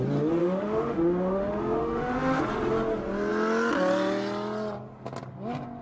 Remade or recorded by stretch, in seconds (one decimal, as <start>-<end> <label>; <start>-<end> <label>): 0.0-0.4 recorded; 0.4-2.4 remade; 2.4-5.8 recorded